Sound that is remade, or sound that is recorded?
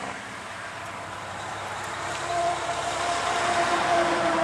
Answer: remade